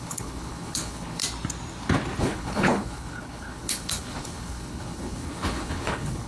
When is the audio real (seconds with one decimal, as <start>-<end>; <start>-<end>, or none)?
1.2-2.2